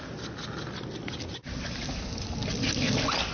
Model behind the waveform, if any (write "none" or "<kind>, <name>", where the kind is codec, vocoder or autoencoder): none